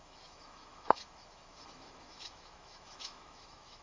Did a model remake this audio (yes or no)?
yes